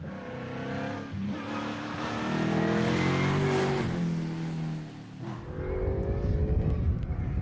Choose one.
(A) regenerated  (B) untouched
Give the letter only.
B